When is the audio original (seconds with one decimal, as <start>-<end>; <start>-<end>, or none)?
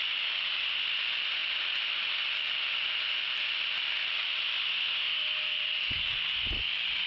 0.0-7.1